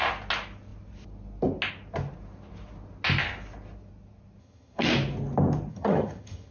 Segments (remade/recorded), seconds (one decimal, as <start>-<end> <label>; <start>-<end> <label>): 0.0-4.4 recorded; 4.4-4.9 remade; 4.9-5.7 recorded; 5.7-6.5 remade